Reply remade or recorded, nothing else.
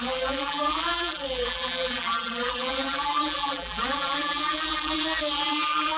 remade